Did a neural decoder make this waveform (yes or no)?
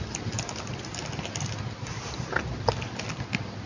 no